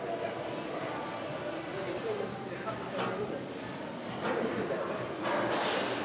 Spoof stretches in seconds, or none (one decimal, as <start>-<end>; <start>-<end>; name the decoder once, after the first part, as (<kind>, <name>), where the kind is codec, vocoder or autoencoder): none